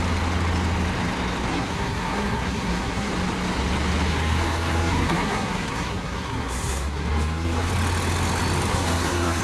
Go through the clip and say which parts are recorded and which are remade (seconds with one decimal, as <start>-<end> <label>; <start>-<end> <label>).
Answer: 0.0-1.5 recorded; 1.5-3.1 remade; 3.1-4.1 recorded; 4.1-7.7 remade; 7.7-8.7 recorded; 8.7-9.4 remade